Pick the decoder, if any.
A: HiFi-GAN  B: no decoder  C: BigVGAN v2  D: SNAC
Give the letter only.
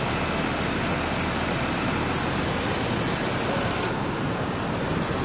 B